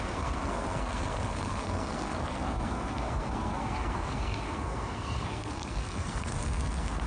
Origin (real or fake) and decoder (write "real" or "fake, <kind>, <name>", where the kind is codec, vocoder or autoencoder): fake, codec, SNAC